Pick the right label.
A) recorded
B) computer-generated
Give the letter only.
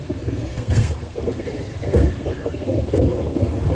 B